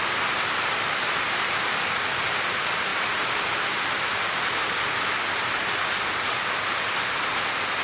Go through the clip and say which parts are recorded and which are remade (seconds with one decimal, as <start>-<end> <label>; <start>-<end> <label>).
0.0-7.8 recorded

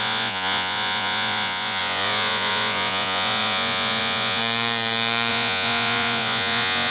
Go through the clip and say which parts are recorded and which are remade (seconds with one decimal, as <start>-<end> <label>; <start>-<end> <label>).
0.0-4.4 remade; 4.4-5.3 recorded; 5.3-6.9 remade

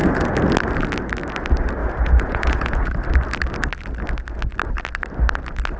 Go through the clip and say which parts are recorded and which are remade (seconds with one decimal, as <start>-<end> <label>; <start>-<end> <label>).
0.0-1.8 recorded; 1.8-2.9 remade; 2.9-5.8 recorded

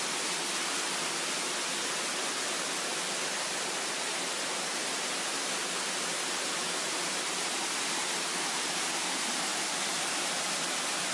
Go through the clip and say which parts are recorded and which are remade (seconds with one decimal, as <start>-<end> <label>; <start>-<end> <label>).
0.0-11.1 recorded

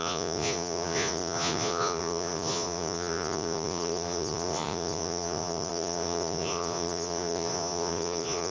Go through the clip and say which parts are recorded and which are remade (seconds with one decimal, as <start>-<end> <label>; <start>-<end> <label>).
0.0-8.5 remade